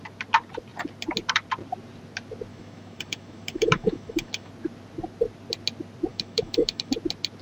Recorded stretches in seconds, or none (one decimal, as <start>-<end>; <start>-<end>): 0.0-2.5; 4.5-6.1; 6.9-7.4